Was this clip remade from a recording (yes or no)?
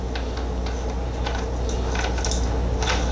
no